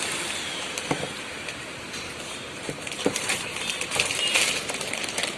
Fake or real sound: fake